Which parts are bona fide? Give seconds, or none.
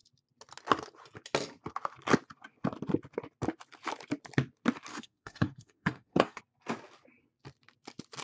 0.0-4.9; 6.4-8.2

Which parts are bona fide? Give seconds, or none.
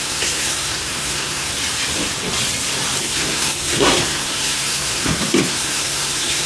1.5-3.0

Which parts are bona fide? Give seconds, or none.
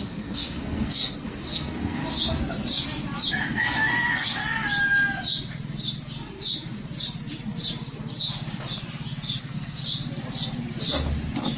2.0-3.3; 4.4-9.4; 9.8-11.6